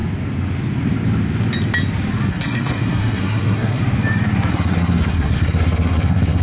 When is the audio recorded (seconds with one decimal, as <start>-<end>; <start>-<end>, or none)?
0.0-2.3; 3.8-4.5